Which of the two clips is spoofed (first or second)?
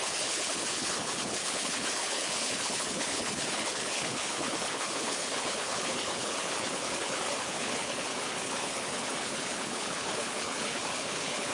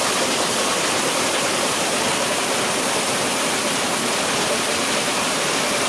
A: first